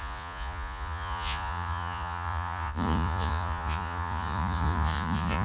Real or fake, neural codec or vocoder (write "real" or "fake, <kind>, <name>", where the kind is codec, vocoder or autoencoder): fake, vocoder, Vocos